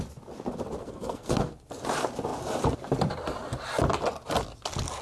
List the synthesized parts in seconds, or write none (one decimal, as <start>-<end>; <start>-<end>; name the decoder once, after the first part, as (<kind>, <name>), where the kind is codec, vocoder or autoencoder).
0.8-1.5 (codec, SNAC)

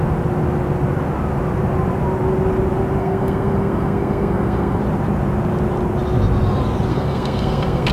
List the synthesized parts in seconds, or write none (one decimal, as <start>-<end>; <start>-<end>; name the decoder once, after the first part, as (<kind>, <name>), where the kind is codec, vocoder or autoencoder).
3.0-4.8 (codec, SNAC); 6.9-7.9

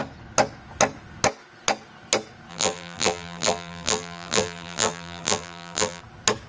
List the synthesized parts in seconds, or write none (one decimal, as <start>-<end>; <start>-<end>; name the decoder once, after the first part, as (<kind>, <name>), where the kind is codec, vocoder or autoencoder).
2.5-6.0 (vocoder, BigVGAN v2)

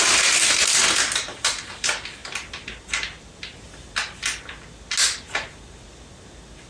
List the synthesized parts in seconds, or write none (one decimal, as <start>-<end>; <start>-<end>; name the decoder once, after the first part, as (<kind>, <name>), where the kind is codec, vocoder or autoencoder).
none

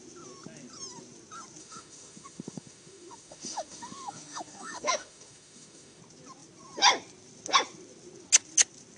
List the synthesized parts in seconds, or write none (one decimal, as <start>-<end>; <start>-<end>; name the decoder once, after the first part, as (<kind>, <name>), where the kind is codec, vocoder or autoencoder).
1.6-6.0 (autoencoder, DAC-VAE)

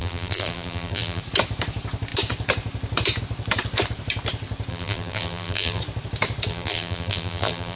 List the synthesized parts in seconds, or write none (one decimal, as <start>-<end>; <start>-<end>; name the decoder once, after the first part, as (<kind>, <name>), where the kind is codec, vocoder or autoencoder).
0.0-1.2 (vocoder, BigVGAN v2); 4.7-5.8; 6.5-7.8

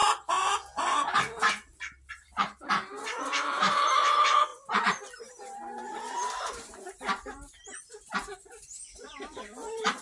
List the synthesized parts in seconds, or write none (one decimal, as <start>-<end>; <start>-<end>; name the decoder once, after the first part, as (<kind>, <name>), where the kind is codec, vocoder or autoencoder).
2.1-4.5 (vocoder, BigVGAN v2); 5.2-10.0